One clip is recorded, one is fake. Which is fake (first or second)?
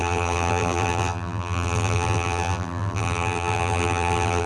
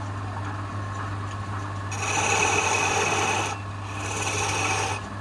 first